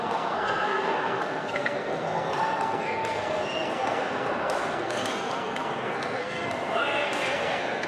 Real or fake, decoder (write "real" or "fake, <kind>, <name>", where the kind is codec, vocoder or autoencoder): fake, codec, SNAC